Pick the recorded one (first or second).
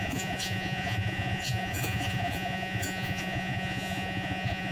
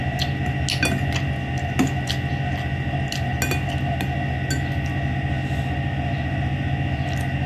second